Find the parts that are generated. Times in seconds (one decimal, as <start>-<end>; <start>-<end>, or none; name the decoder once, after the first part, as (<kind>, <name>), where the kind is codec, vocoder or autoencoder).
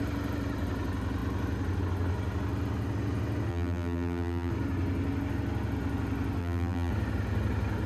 3.5-4.5 (vocoder, BigVGAN v2); 6.4-6.9